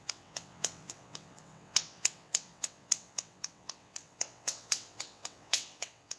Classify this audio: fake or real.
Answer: fake